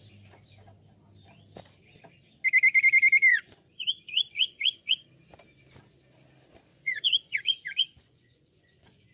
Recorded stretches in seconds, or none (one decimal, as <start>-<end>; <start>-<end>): 0.0-3.3; 5.1-6.7